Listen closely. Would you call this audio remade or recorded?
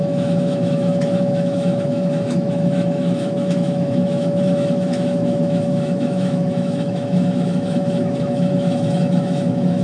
remade